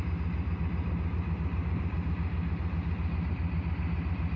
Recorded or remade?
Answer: recorded